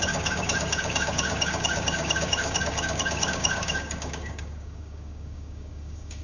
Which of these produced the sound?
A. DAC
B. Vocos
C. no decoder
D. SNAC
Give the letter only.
A